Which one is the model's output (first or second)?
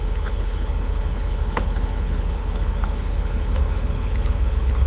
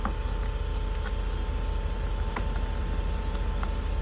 first